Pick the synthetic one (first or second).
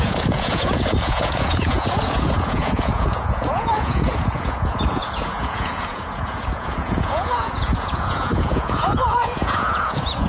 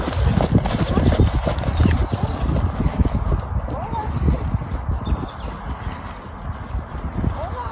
first